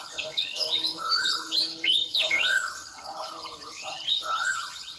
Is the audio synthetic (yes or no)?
yes